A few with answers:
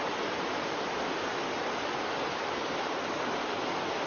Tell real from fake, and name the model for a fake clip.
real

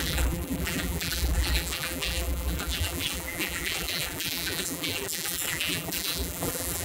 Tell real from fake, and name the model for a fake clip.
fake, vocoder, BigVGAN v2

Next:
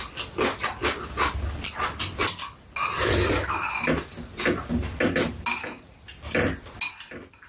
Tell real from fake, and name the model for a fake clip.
real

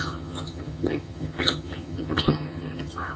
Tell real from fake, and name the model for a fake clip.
fake, vocoder, HiFi-GAN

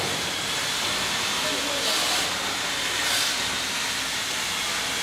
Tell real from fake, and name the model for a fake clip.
real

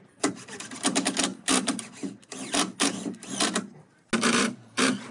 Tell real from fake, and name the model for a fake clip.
real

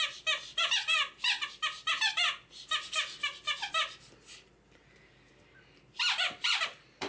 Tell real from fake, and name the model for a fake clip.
real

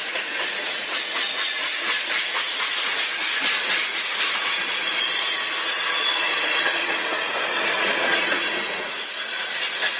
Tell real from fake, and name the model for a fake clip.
fake, vocoder, Vocos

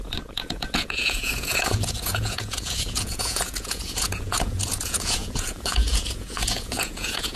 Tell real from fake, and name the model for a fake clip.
fake, vocoder, Vocos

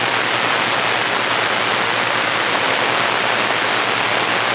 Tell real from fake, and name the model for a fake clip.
real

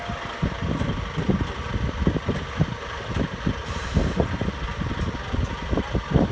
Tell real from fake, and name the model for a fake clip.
real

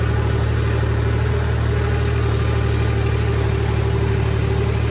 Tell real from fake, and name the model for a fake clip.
real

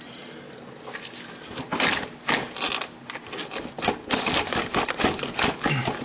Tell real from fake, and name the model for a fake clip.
real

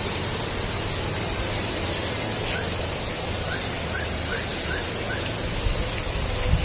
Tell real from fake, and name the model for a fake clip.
real